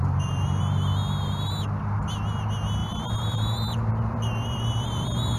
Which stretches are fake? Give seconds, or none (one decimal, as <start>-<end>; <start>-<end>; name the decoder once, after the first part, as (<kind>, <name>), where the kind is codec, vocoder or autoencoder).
0.0-0.6 (vocoder, BigVGAN v2); 2.8-5.4